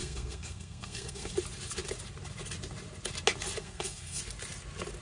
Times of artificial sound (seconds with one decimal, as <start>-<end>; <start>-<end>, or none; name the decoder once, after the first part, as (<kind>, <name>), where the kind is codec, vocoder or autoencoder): 0.0-1.3 (codec, SNAC); 3.6-4.2